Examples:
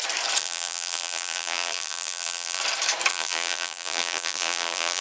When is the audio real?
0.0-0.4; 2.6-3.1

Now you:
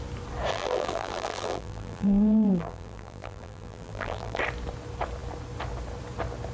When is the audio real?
0.0-0.5; 4.4-6.5

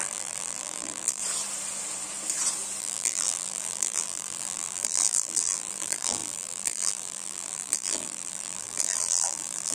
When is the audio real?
1.2-2.8

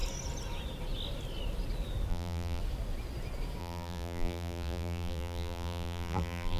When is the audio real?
0.0-2.1; 2.6-3.6

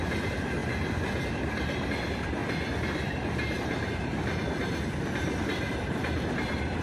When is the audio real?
0.6-1.3; 2.4-3.6; 4.1-5.1

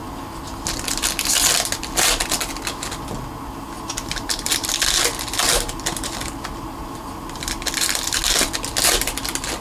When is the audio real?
0.0-9.6

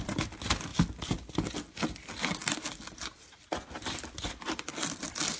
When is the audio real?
0.0-5.4